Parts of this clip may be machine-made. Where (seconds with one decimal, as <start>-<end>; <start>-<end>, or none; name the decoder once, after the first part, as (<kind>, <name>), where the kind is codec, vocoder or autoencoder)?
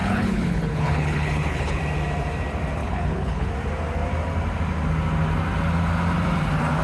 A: 0.0-1.8 (codec, HILCodec); 2.8-3.5